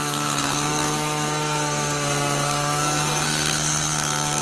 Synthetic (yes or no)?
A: yes